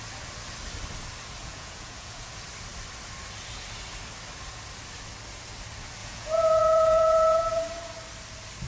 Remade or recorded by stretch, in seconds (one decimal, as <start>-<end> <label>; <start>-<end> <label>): 0.0-1.4 recorded; 1.4-2.3 remade; 2.3-6.0 recorded; 6.0-7.6 remade; 7.6-8.7 recorded